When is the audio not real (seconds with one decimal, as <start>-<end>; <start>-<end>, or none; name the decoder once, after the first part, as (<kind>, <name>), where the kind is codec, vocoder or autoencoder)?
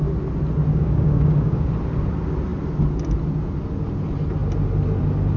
0.7-1.7 (codec, DAC)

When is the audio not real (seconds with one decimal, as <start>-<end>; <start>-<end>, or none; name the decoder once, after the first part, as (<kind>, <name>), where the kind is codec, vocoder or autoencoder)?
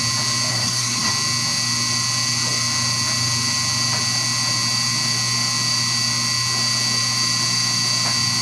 0.5-1.1 (codec, SNAC)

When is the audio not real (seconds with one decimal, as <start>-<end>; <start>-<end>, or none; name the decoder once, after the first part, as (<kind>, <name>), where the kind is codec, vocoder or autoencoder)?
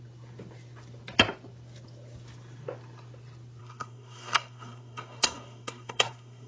3.6-6.5 (codec, SNAC)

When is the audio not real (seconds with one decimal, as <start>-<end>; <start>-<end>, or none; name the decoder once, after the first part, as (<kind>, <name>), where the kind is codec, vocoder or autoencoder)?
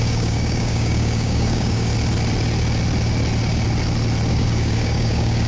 0.0-1.9 (codec, DAC); 4.3-5.5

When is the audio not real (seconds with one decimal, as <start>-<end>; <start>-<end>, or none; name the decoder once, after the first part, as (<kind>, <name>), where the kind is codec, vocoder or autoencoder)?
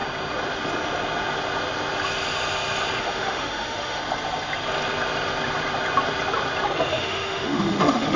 3.0-4.0 (autoencoder, DAC-VAE); 6.9-8.2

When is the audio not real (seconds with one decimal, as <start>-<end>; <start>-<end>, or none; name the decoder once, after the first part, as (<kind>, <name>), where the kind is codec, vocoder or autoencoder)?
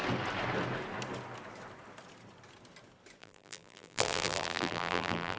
3.2-5.4 (vocoder, BigVGAN v2)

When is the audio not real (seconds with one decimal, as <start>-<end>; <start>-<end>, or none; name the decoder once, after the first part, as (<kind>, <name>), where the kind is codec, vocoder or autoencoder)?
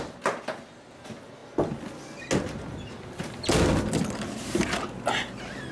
none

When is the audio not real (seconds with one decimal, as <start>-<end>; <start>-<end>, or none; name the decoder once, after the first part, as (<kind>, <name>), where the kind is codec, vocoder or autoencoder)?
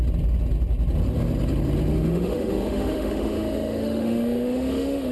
1.9-5.1 (autoencoder, DAC-VAE)